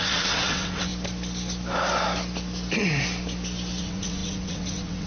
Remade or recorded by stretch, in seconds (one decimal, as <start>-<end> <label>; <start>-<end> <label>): 0.0-0.9 remade; 0.9-3.8 recorded; 3.8-5.1 remade